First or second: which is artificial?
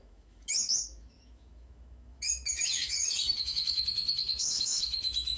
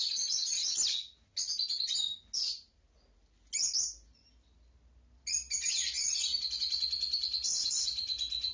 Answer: first